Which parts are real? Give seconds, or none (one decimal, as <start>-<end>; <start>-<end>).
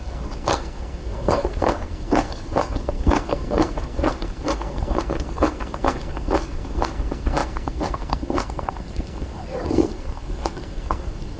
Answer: none